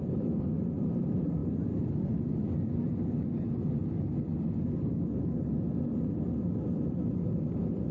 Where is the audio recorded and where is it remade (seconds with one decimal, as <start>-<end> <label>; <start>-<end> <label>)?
0.0-7.9 recorded